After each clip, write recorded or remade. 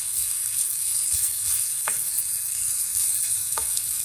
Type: remade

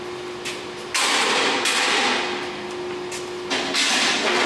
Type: recorded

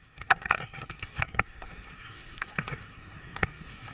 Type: remade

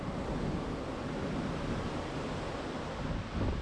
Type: recorded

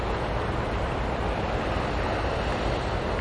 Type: recorded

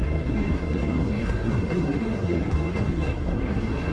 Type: remade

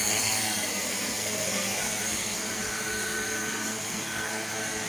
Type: remade